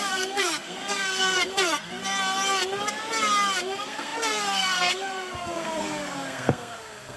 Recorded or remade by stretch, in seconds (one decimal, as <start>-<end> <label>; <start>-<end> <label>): 0.0-2.0 remade; 2.0-3.6 recorded; 3.6-7.2 remade